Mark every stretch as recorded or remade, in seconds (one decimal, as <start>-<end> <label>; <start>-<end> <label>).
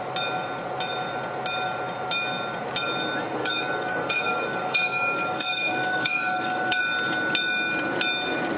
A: 0.0-3.4 recorded; 3.4-6.8 remade; 6.8-8.6 recorded